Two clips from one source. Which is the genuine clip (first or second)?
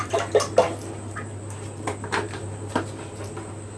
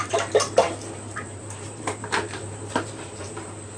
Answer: first